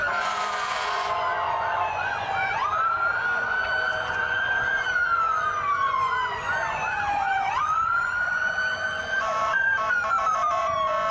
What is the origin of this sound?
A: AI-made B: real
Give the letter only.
A